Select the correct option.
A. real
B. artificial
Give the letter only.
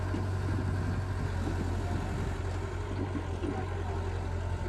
A